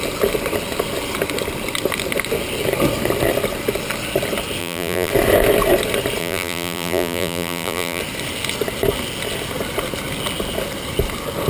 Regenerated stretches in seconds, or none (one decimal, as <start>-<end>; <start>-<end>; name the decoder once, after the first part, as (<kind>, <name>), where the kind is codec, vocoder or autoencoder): 4.6-5.1 (vocoder, BigVGAN v2); 6.2-8.0